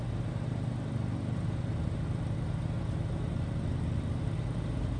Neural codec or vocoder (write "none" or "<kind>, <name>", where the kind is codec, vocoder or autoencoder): none